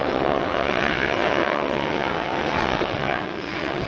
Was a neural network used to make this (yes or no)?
yes